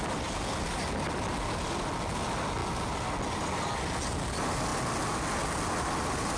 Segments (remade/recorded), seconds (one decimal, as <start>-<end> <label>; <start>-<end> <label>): 0.0-6.4 recorded